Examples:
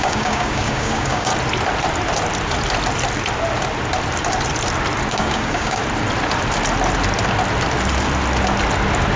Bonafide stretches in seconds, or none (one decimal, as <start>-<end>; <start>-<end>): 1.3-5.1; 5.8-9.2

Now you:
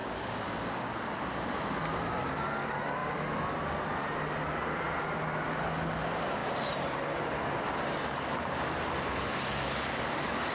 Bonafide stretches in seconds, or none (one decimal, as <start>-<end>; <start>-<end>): 0.9-9.3

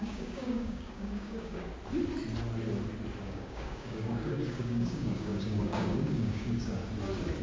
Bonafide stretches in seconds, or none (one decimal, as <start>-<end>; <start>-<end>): 1.7-3.2; 6.8-7.4

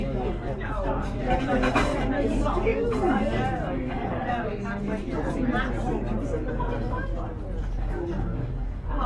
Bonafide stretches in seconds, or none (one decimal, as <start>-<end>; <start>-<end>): 4.9-6.5; 7.1-7.6

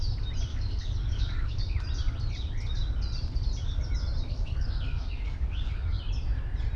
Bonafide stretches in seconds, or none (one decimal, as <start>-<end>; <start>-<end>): 0.0-0.5; 1.6-4.3; 6.0-6.8

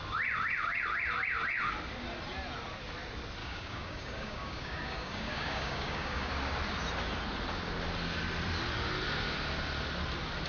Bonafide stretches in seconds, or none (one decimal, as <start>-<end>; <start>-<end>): 0.0-3.4; 6.3-10.5